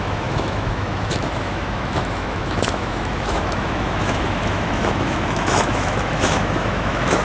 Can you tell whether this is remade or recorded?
remade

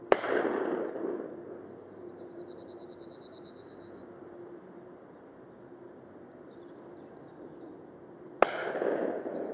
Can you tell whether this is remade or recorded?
recorded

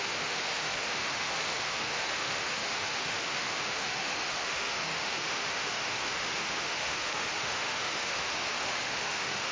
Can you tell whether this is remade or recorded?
remade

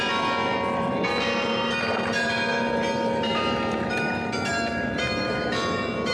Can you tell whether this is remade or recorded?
remade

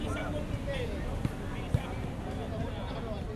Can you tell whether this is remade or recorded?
recorded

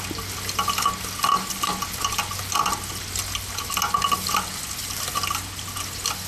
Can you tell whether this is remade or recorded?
recorded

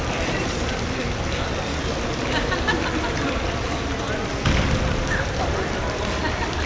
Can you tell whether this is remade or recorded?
recorded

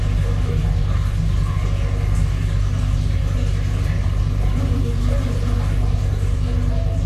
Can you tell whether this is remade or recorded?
recorded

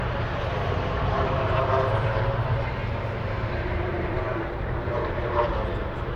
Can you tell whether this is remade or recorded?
remade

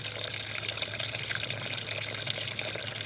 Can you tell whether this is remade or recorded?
recorded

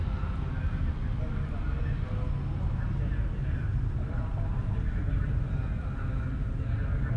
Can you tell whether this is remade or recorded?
recorded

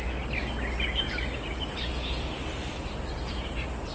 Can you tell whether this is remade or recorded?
recorded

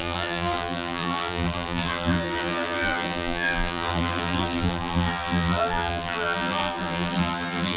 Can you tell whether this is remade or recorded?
remade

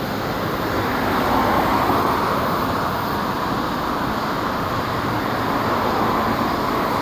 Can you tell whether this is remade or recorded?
recorded